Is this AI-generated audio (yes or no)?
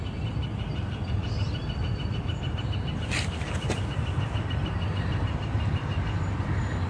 yes